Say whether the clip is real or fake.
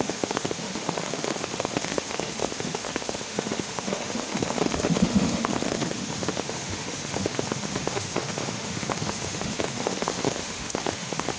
fake